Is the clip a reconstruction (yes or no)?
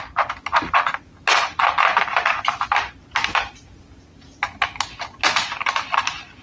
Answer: no